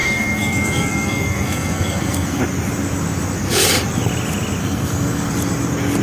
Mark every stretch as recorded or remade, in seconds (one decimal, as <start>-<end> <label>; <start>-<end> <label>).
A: 0.0-2.4 remade; 2.4-4.6 recorded; 4.6-5.3 remade; 5.3-6.0 recorded